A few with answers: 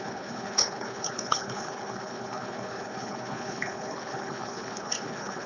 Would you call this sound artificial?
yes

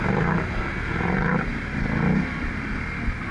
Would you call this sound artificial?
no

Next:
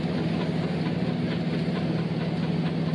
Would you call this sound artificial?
no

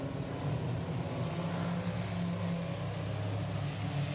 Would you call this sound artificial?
no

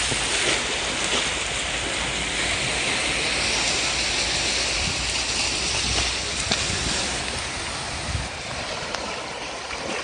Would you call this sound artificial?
no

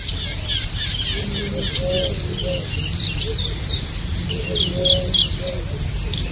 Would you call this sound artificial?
no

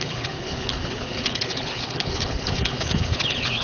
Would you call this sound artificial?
yes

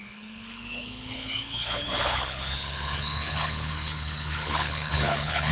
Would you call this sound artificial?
yes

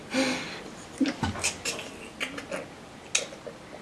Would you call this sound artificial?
no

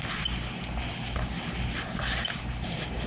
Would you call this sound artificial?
no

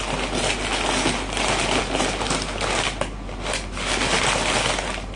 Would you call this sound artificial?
no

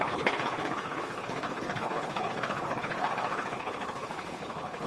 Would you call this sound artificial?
yes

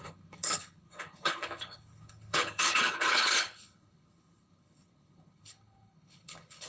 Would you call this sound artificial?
yes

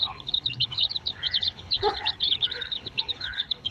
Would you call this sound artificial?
yes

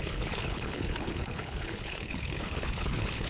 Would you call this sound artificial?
yes